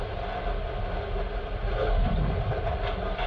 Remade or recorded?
recorded